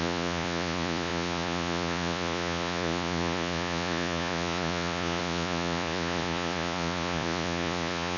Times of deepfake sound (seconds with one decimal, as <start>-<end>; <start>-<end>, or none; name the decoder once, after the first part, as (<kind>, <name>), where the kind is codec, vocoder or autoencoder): 0.0-8.2 (vocoder, Vocos)